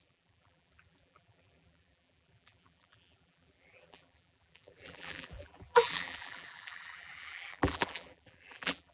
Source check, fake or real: fake